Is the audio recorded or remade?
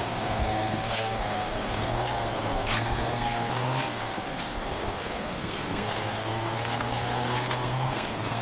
remade